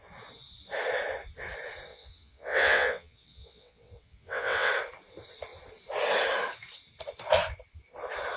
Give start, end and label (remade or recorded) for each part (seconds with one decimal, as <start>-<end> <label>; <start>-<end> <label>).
0.0-1.9 recorded; 1.9-4.7 remade; 4.7-8.4 recorded

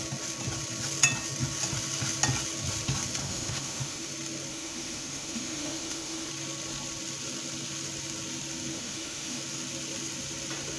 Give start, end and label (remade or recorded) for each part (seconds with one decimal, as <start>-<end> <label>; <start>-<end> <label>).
0.0-3.2 recorded; 3.2-4.1 remade; 4.1-4.5 recorded; 4.5-6.3 remade; 6.3-8.7 recorded; 8.7-9.4 remade; 9.4-10.8 recorded

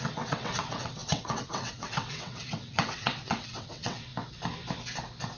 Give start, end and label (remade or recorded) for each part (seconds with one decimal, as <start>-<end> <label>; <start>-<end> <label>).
0.0-4.1 remade; 4.1-5.4 recorded